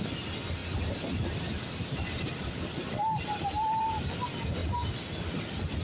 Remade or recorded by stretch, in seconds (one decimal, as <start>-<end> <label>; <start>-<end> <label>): 0.0-0.6 recorded; 0.6-4.1 remade; 4.1-5.8 recorded